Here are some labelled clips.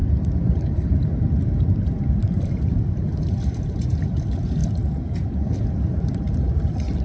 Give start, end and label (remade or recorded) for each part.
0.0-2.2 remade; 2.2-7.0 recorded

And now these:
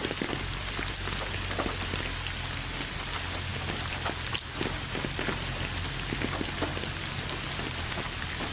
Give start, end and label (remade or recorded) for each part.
0.0-8.5 recorded

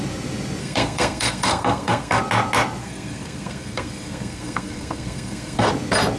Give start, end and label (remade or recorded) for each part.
0.0-0.6 recorded; 0.6-2.2 remade; 2.2-2.8 recorded; 2.8-5.7 remade; 5.7-6.2 recorded

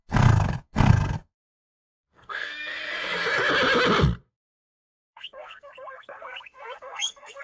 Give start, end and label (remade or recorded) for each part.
0.0-2.5 remade; 2.5-4.3 recorded; 4.3-7.4 remade

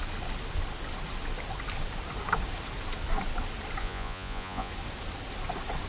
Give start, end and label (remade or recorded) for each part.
0.0-3.8 recorded; 3.8-4.7 remade; 4.7-5.9 recorded

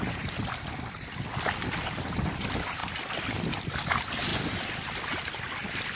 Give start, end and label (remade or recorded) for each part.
0.0-6.0 recorded